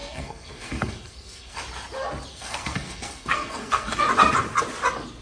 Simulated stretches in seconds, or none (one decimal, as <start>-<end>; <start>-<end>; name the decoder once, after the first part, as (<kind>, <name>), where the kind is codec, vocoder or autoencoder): 0.0-1.6 (codec, SNAC); 2.3-4.1